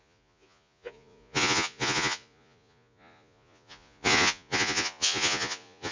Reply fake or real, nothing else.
fake